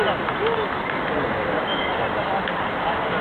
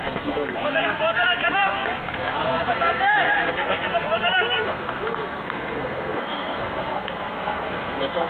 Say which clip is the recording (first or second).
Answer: first